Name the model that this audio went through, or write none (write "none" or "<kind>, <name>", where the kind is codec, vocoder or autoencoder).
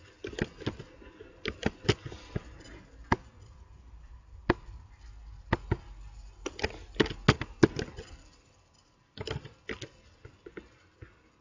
none